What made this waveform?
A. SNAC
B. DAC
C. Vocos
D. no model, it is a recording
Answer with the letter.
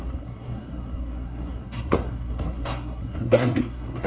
A